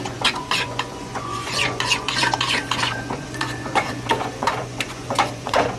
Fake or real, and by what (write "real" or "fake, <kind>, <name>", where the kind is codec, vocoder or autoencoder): fake, vocoder, Vocos